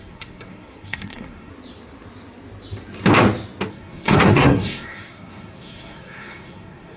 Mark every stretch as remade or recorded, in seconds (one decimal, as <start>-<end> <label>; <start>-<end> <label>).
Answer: 0.0-1.5 remade; 1.5-3.7 recorded; 3.7-7.0 remade